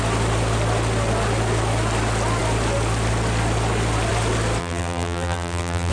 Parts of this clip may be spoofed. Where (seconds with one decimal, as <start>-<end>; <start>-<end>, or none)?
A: 4.6-5.9